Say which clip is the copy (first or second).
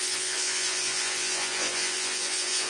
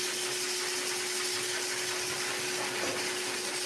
first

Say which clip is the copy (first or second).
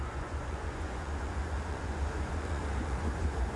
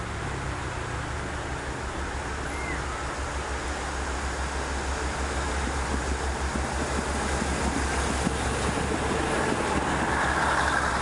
first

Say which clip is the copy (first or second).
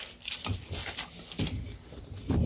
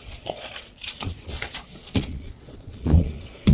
second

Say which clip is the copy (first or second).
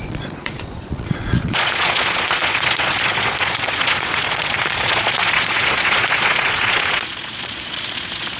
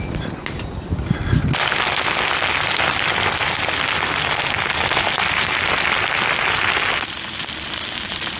first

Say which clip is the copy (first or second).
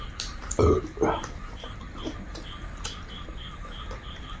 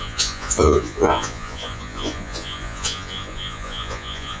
second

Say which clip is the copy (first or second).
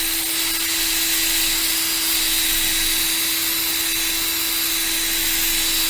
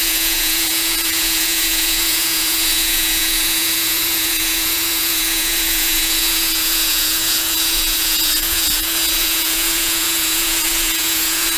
second